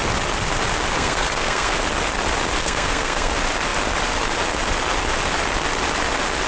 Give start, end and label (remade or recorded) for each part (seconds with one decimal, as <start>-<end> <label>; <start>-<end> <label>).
0.0-0.9 recorded; 0.9-1.8 remade; 1.8-2.6 recorded; 2.6-3.3 remade; 3.3-6.5 recorded